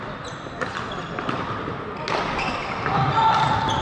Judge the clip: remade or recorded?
recorded